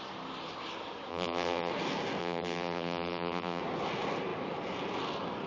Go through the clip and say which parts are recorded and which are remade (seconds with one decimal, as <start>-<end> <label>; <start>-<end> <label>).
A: 0.0-1.1 recorded; 1.1-1.7 remade; 1.7-2.2 recorded; 2.2-3.6 remade; 3.6-5.5 recorded

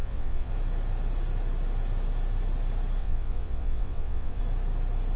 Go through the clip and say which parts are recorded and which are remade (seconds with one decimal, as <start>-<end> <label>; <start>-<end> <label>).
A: 0.0-0.5 remade; 0.5-3.0 recorded; 3.0-4.4 remade; 4.4-5.2 recorded

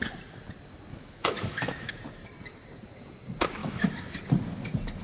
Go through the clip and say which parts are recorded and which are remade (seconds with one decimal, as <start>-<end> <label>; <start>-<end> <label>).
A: 0.0-0.9 recorded; 0.9-1.9 remade; 1.9-3.6 recorded; 3.6-4.2 remade; 4.2-5.0 recorded

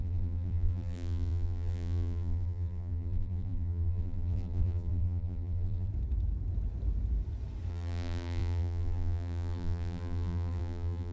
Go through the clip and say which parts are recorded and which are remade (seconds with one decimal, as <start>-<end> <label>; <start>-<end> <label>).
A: 0.0-5.9 remade; 5.9-7.7 recorded; 7.7-11.1 remade

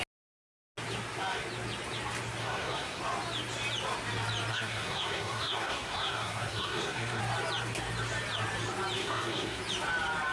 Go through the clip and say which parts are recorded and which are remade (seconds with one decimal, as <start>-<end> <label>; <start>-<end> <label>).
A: 0.0-2.4 recorded; 2.4-3.0 remade; 3.0-4.5 recorded; 4.5-7.2 remade; 7.2-9.0 recorded; 9.0-9.6 remade; 9.6-10.3 recorded

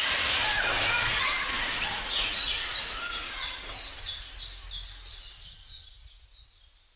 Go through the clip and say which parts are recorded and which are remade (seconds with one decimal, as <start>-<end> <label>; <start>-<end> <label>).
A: 0.0-0.4 recorded; 0.4-4.2 remade; 4.2-5.1 recorded; 5.1-5.9 remade; 5.9-7.0 recorded

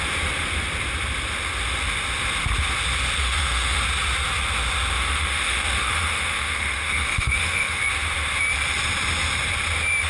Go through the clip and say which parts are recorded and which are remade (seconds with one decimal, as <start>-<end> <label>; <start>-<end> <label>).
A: 0.0-3.2 recorded; 3.2-3.8 remade; 3.8-4.9 recorded; 4.9-7.8 remade; 7.8-10.1 recorded